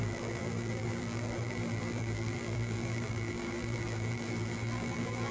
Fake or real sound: fake